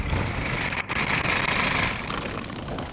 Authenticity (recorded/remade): recorded